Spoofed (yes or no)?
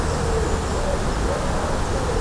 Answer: no